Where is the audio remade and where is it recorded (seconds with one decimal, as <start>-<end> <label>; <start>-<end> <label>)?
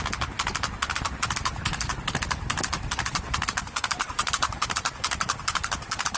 0.0-3.1 recorded; 3.1-6.2 remade